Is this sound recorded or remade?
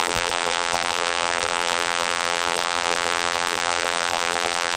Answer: remade